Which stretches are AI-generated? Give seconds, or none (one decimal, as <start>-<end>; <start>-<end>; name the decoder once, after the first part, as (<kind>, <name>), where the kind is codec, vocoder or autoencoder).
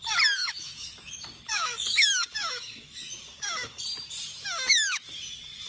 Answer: 0.4-3.8 (autoencoder, DAC-VAE); 4.3-5.1